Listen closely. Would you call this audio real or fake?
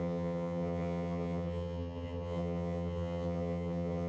fake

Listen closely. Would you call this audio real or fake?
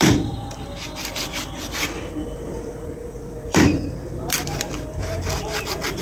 fake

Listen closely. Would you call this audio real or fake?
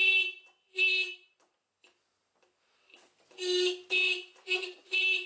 real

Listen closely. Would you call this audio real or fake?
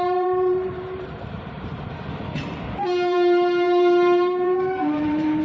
fake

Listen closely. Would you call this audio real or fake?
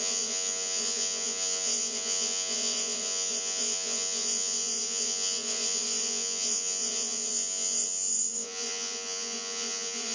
fake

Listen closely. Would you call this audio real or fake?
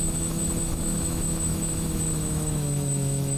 fake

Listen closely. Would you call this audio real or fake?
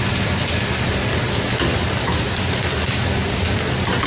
real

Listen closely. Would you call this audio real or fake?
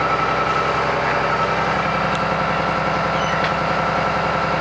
real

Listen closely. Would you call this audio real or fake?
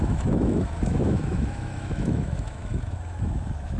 fake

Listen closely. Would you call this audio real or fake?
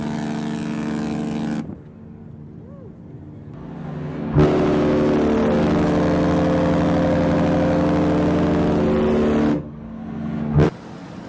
real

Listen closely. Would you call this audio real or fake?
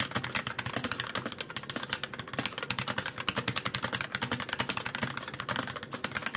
real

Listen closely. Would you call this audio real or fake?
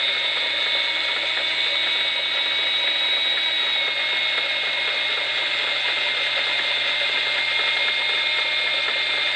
real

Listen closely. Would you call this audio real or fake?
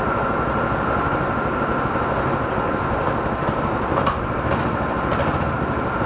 real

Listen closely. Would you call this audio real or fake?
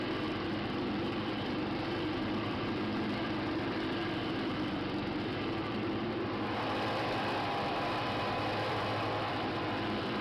fake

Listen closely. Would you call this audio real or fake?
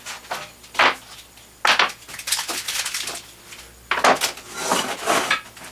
real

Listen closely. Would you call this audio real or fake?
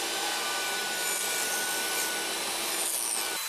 real